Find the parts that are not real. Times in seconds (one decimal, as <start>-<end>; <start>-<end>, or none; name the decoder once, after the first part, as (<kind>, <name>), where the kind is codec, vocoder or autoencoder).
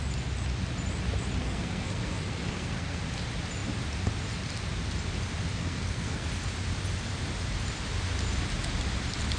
1.4-3.0 (codec, SNAC); 5.5-6.3